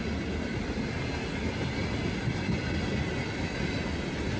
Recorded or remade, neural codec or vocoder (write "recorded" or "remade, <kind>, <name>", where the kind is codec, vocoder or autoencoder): recorded